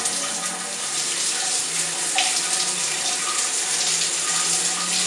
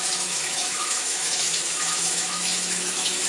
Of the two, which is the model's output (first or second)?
second